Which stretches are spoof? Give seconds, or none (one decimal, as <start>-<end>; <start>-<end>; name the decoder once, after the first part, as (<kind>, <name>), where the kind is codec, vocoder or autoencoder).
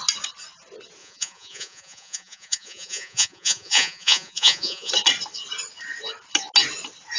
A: 1.0-4.9 (vocoder, Vocos)